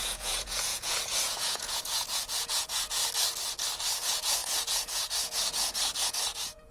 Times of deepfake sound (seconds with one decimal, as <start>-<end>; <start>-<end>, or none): 0.0-3.0; 4.0-6.7